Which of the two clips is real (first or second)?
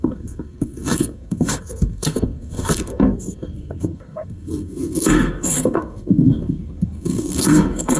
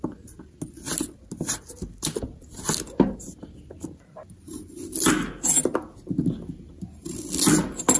second